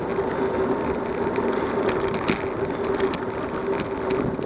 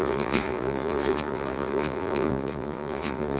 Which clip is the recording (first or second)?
first